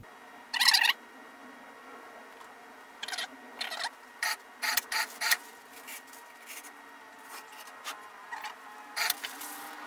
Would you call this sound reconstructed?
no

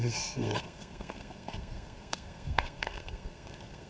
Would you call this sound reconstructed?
yes